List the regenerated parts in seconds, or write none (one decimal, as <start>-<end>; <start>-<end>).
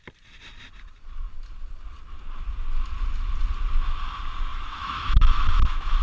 4.5-6.0